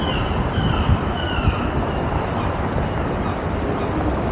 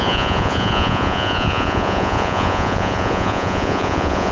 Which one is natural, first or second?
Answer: first